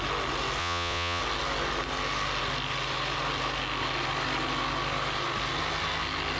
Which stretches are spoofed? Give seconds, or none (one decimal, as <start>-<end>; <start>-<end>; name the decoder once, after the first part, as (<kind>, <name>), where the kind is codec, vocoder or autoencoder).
0.6-1.2 (vocoder, Vocos)